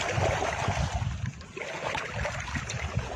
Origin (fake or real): real